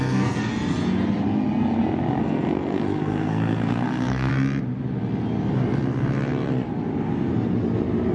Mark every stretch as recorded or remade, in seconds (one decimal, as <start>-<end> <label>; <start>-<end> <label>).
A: 0.0-0.5 remade; 0.5-2.2 recorded; 2.2-4.3 remade; 4.3-8.1 recorded